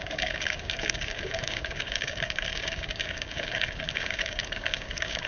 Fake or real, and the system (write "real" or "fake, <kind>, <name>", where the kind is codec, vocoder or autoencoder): fake, codec, DAC